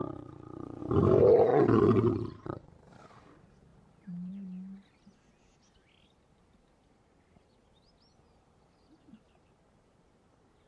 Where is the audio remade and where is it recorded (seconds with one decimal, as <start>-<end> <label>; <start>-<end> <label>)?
0.0-0.8 remade; 0.8-1.5 recorded; 1.5-2.7 remade; 2.7-10.7 recorded